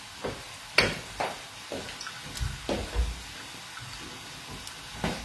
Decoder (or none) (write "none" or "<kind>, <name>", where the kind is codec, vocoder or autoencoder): none